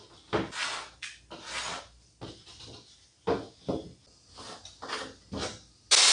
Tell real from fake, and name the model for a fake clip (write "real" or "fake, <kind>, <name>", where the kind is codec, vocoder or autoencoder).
real